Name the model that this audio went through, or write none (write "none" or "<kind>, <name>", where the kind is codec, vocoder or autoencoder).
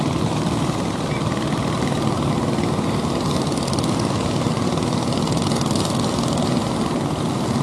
none